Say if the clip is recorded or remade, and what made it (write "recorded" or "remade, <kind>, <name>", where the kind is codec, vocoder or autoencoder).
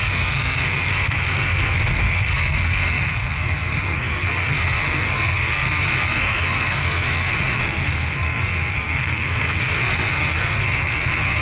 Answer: remade, codec, SNAC